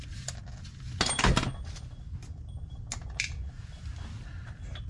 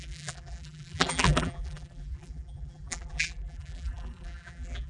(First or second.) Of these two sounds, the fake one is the second